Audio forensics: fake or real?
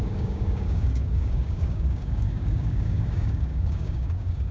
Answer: fake